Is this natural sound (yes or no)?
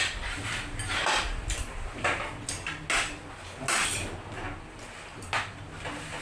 yes